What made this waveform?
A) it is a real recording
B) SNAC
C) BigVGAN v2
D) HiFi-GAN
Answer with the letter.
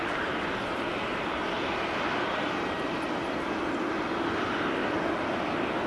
A